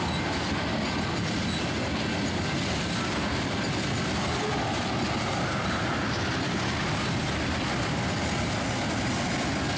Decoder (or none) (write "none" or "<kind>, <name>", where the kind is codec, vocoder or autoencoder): none